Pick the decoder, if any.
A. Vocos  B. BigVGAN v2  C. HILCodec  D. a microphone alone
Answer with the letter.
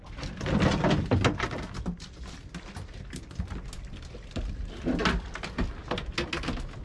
D